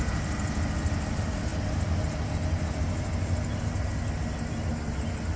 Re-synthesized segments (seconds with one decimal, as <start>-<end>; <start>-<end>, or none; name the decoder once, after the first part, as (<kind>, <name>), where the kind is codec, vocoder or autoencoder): none